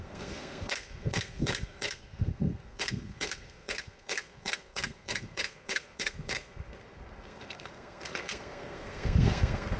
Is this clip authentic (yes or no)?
no